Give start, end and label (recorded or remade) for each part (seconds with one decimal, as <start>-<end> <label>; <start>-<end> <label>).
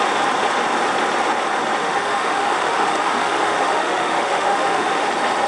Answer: 0.0-1.8 recorded; 1.8-5.1 remade; 5.1-5.5 recorded